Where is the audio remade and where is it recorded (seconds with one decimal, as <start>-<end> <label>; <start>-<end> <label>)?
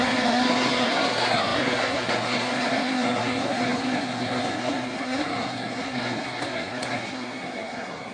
0.0-8.1 remade